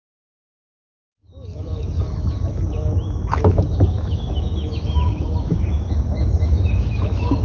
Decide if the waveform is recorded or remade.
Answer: remade